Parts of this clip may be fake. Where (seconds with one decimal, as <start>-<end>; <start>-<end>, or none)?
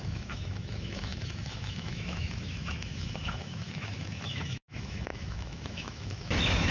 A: 0.0-6.7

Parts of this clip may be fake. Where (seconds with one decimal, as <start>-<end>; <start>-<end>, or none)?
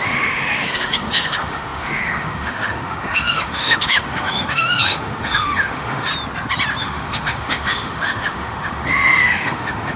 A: 0.0-6.1; 6.8-10.0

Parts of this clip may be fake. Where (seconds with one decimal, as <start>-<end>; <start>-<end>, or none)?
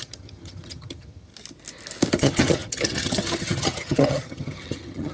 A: 0.0-1.3; 2.1-5.1